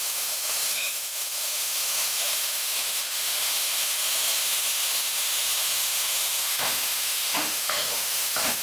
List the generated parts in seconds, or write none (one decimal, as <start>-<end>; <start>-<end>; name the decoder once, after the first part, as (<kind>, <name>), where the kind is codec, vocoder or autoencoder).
0.0-8.6 (autoencoder, DAC-VAE)